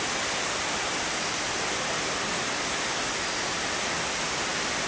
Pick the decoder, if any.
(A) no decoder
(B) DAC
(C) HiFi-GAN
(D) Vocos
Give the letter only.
A